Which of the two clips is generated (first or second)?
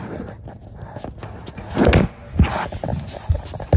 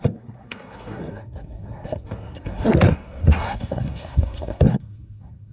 second